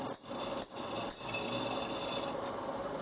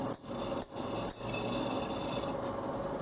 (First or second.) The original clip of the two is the second